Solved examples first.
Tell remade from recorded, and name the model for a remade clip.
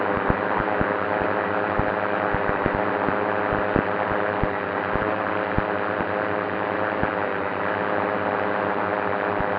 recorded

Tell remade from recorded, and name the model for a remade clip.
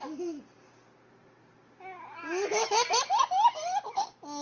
recorded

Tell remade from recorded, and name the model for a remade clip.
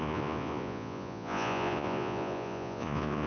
remade, vocoder, Vocos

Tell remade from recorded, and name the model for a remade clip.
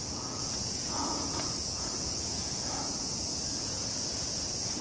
remade, vocoder, Vocos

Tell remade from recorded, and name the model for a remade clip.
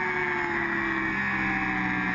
recorded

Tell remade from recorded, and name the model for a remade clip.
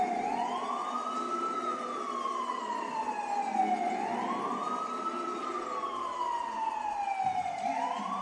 recorded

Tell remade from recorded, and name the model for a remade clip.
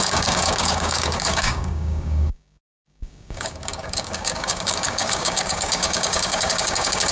remade, codec, DAC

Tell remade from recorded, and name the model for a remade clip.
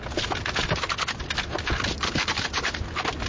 recorded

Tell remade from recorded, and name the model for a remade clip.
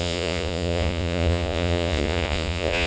remade, vocoder, Vocos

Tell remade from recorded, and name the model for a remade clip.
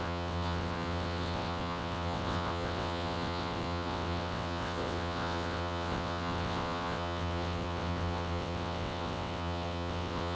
remade, vocoder, WaveNeXt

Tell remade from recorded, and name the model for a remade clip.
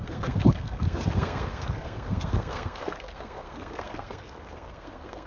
remade, codec, SNAC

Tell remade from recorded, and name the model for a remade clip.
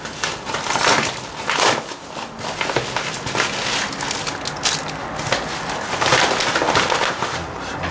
recorded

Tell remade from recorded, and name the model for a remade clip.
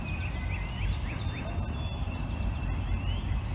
recorded